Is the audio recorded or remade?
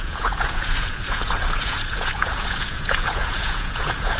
remade